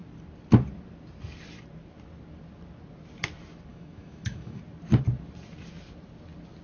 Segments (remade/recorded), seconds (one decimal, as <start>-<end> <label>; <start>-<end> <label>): 0.0-3.7 recorded; 3.7-4.6 remade; 4.6-6.6 recorded